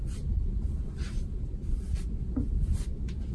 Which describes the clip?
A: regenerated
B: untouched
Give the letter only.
B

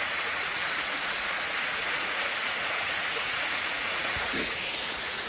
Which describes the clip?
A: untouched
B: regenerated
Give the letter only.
B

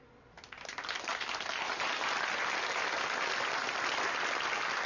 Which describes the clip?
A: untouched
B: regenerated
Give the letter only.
A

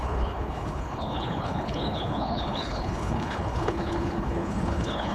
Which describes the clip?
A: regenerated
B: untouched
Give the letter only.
A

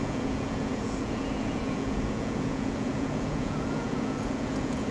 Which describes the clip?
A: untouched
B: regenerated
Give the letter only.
B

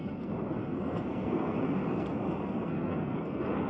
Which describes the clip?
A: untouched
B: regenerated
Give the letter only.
B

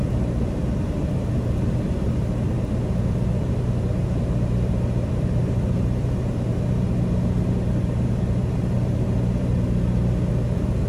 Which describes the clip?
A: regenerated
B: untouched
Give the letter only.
B